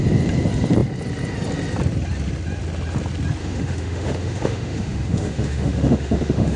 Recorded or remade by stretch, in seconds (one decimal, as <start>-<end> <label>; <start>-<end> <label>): 0.0-3.4 recorded; 3.4-6.6 remade